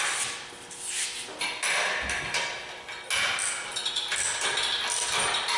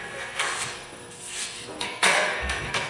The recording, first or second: first